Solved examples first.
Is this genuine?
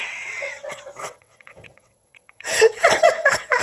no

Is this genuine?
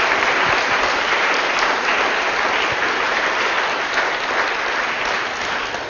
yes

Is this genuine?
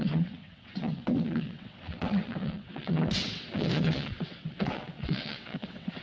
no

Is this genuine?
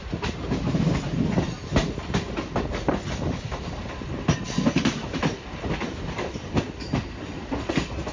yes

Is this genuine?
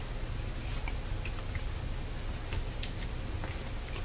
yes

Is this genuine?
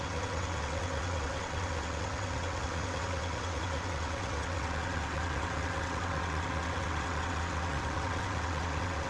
no